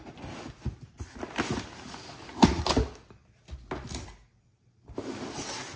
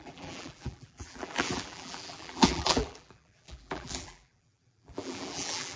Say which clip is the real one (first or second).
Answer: first